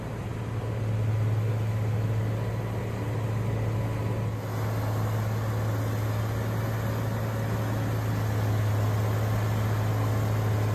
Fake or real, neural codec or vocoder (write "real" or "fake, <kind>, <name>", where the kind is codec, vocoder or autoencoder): real